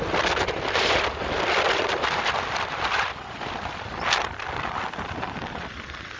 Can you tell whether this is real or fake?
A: fake